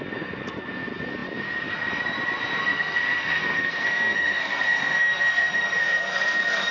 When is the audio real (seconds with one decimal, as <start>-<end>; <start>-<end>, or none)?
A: 0.0-2.6